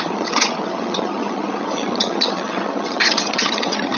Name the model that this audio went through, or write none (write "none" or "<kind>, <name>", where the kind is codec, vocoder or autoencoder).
vocoder, HiFi-GAN